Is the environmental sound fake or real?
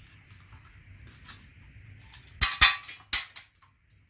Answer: real